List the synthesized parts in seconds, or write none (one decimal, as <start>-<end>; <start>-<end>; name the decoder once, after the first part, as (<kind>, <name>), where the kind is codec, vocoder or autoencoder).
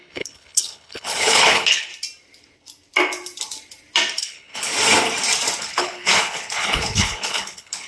0.0-1.9 (codec, HILCodec); 4.2-4.7; 5.6-7.9